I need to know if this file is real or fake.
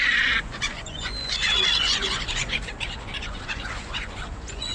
fake